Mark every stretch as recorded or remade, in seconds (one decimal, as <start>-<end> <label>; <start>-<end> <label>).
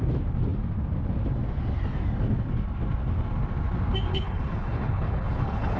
0.0-4.1 recorded; 4.1-5.8 remade